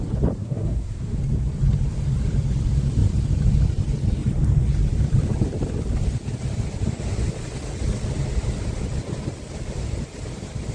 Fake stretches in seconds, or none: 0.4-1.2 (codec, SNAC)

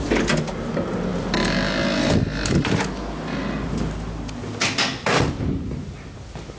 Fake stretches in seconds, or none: none

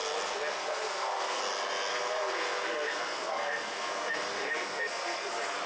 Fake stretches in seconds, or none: 0.6-1.4 (codec, SNAC); 1.9-5.3

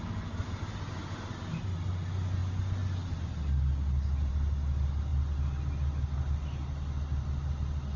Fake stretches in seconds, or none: 0.4-1.6 (vocoder, BigVGAN v2)

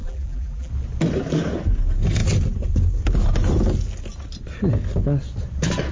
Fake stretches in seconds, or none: 0.0-0.7 (vocoder, BigVGAN v2)